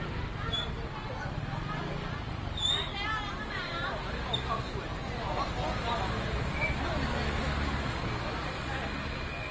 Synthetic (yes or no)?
no